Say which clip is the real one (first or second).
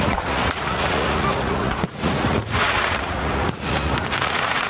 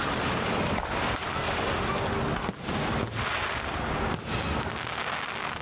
second